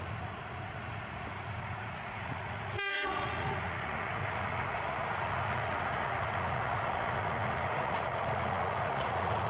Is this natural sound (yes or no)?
no